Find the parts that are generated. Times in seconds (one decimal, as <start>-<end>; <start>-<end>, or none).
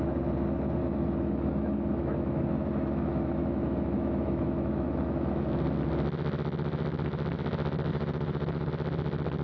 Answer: 0.8-5.5; 7.9-8.7